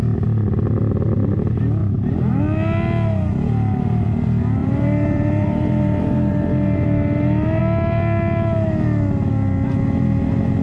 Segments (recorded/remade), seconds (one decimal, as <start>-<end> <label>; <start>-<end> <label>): 0.0-1.8 recorded; 1.8-2.4 remade; 2.4-4.6 recorded; 4.6-7.6 remade; 7.6-10.6 recorded